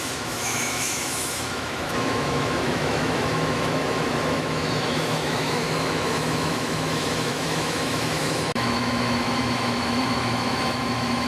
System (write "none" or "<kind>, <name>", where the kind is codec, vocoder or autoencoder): autoencoder, DAC-VAE